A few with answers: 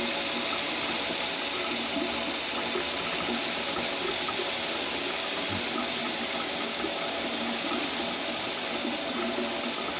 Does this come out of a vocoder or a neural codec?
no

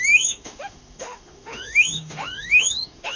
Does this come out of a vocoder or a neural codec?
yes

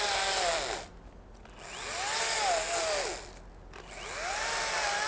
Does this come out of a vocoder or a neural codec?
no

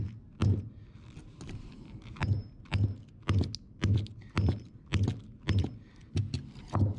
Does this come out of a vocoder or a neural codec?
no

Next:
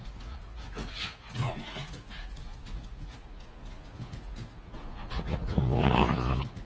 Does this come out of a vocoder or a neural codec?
yes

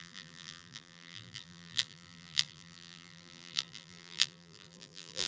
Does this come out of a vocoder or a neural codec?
yes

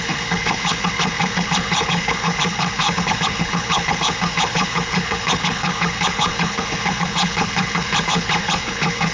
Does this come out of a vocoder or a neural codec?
yes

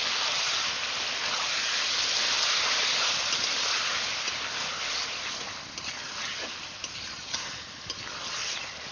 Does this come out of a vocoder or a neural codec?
no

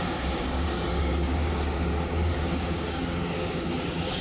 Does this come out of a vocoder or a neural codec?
yes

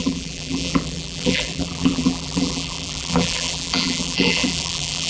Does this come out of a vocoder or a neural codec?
yes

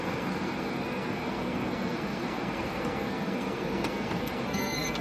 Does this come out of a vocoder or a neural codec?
yes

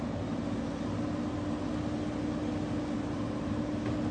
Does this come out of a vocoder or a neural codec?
no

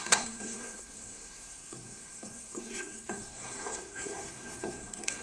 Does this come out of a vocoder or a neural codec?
yes